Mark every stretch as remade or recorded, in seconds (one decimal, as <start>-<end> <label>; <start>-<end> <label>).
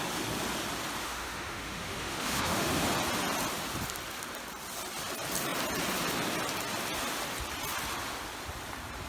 0.0-1.0 recorded; 1.0-2.7 remade; 2.7-9.1 recorded